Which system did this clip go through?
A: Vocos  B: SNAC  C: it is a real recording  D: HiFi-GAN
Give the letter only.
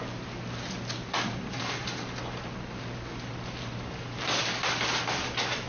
C